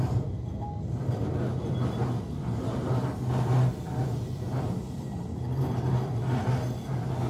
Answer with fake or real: real